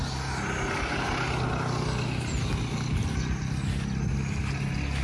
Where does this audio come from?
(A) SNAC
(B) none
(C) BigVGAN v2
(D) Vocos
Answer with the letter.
B